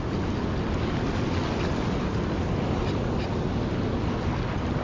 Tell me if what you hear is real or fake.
real